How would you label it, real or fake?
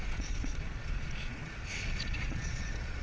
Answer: fake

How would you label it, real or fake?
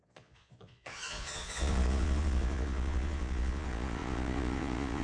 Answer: fake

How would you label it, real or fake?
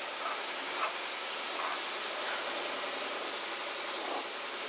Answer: real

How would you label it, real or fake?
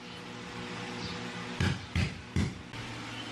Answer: real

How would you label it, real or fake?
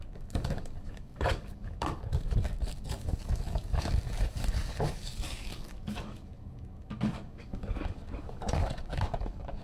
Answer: fake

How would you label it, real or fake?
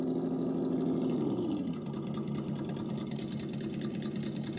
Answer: real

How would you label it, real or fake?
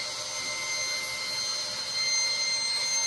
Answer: real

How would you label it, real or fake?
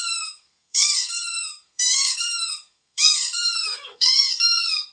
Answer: fake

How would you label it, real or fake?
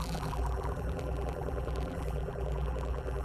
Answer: fake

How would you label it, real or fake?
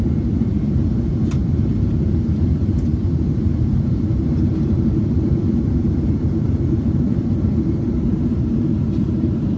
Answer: fake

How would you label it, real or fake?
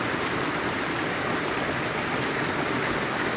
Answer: real